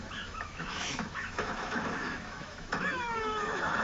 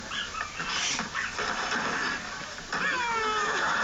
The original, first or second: second